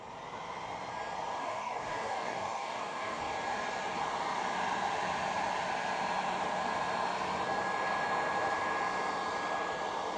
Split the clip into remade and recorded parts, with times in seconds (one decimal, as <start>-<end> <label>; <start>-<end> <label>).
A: 0.0-1.4 recorded; 1.4-3.2 remade; 3.2-10.2 recorded